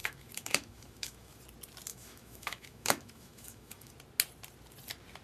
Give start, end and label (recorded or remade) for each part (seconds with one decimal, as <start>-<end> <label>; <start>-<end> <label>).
0.0-1.4 remade; 1.4-1.9 recorded; 1.9-3.9 remade; 3.9-5.2 recorded